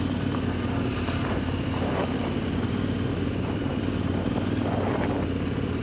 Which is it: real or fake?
fake